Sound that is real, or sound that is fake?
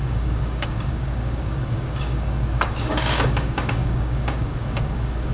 fake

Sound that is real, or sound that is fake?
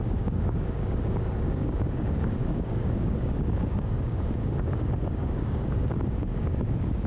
fake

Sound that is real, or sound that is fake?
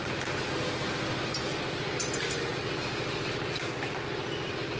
real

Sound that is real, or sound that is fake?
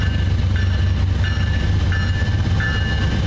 real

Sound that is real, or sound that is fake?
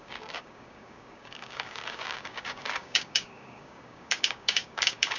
fake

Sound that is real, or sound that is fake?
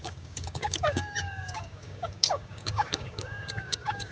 fake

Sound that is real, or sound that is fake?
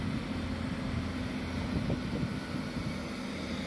real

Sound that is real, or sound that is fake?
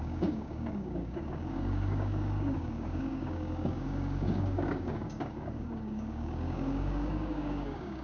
fake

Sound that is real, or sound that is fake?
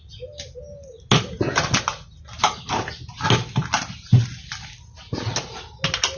real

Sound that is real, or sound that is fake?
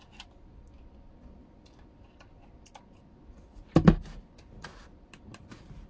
real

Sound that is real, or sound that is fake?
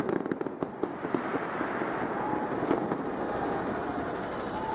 real